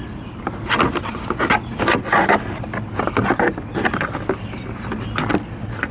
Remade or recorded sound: recorded